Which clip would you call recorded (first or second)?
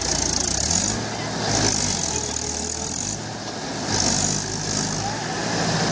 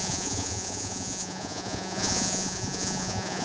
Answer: first